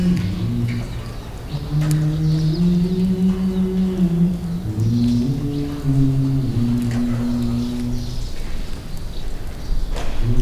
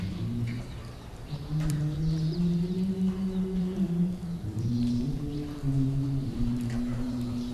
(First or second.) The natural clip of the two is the first